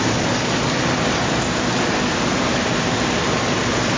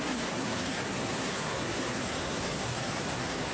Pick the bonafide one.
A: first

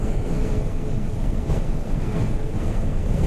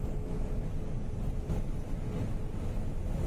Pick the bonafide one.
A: second